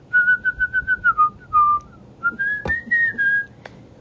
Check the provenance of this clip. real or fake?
real